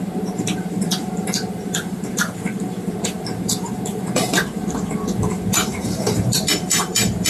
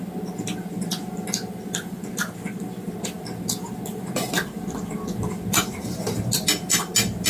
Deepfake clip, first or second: first